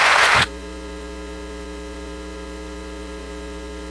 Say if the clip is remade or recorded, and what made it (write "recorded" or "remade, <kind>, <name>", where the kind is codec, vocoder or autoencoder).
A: remade, vocoder, Vocos